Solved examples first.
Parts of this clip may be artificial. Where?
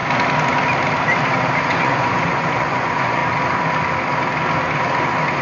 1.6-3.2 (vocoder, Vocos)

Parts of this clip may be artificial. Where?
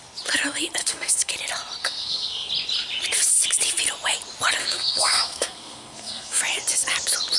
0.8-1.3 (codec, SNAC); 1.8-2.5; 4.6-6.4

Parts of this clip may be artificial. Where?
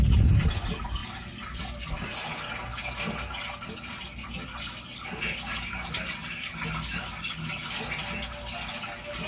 none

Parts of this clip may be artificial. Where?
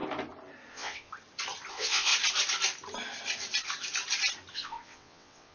0.7-1.1 (vocoder, WaveNeXt); 1.7-2.1; 4.5-5.5